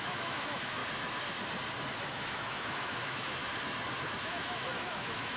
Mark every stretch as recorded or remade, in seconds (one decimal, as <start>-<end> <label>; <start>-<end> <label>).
0.0-0.8 remade; 0.8-2.1 recorded; 2.1-3.4 remade; 3.4-4.2 recorded; 4.2-5.4 remade